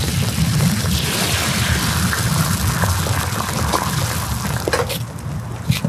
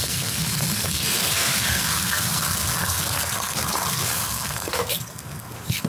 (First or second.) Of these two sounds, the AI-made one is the second